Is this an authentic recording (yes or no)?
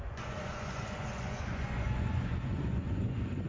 no